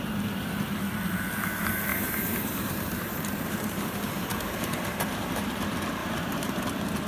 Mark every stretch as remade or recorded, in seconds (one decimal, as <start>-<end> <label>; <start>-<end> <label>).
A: 0.0-1.9 recorded; 1.9-5.5 remade; 5.5-6.0 recorded; 6.0-6.6 remade; 6.6-7.1 recorded